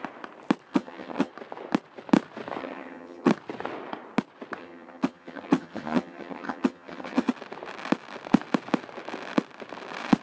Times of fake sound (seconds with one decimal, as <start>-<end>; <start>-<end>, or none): 0.7-1.3; 2.6-3.3; 4.6-7.3